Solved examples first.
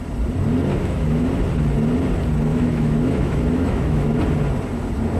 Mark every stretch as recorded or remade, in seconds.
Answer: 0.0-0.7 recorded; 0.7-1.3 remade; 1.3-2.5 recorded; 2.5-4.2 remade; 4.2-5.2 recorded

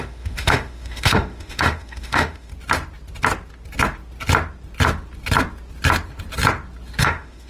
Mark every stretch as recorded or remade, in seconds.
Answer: 0.0-2.5 remade; 2.5-7.0 recorded; 7.0-7.5 remade

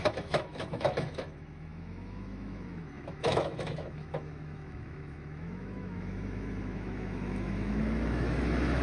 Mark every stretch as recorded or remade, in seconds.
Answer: 0.0-8.8 remade

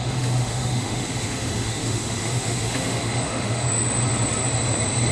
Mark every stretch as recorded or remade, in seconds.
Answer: 0.0-4.0 remade; 4.0-5.1 recorded

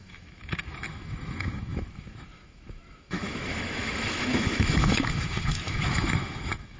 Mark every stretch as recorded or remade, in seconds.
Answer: 0.0-6.8 remade

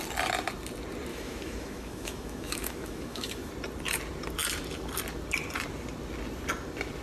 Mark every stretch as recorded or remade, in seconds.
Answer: 0.0-1.1 recorded; 1.1-3.5 remade; 3.5-7.0 recorded